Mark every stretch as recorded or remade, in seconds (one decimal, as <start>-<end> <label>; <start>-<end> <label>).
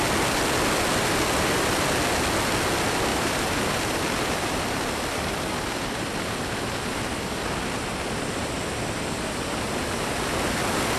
0.0-3.1 recorded; 3.1-7.4 remade; 7.4-11.0 recorded